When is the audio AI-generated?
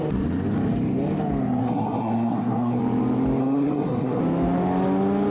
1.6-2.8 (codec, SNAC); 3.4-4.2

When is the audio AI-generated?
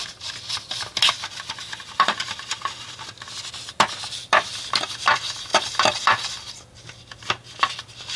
none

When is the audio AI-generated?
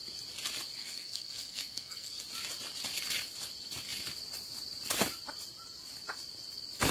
0.8-2.2 (codec, SNAC)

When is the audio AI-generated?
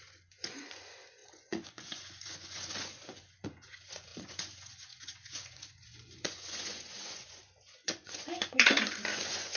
0.0-9.6 (vocoder, Vocos)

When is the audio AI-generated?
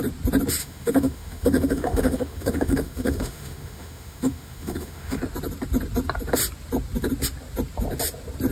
0.6-5.2 (autoencoder, DAC-VAE)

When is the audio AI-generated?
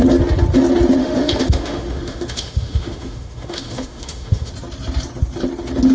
1.0-4.5 (autoencoder, DAC-VAE)